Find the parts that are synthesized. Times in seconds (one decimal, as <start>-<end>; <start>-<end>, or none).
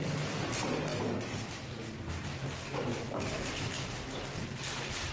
none